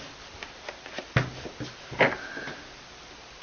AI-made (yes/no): no